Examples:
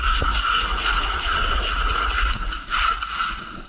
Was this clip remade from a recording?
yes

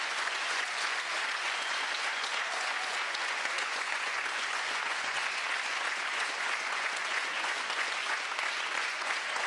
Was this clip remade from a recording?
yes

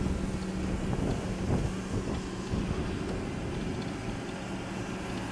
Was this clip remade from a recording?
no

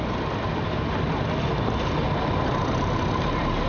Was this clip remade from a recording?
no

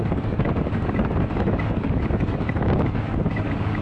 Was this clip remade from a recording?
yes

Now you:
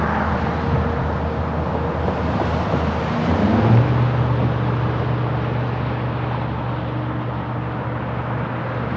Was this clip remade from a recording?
no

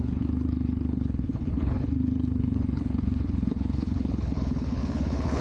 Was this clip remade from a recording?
yes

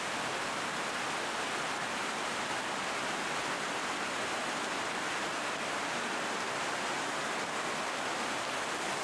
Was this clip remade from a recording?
no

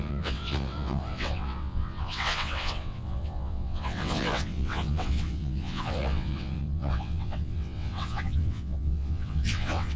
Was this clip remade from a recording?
yes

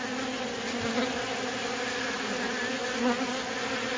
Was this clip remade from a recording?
no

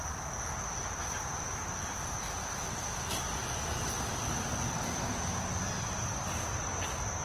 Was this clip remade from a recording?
no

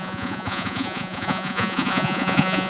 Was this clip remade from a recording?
yes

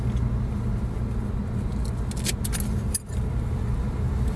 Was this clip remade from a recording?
no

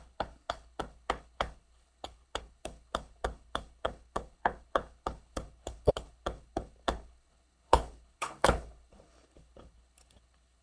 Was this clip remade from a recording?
yes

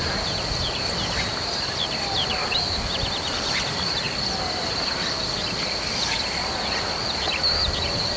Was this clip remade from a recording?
no